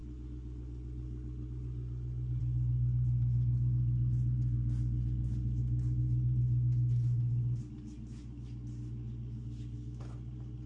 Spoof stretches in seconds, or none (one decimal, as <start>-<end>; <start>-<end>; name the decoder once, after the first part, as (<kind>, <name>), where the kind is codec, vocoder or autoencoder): none